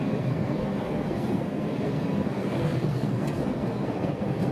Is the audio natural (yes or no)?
no